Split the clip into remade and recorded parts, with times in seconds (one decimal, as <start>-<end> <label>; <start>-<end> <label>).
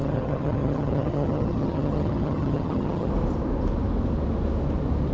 0.0-3.1 remade; 3.1-5.1 recorded